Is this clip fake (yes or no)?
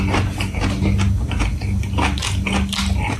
no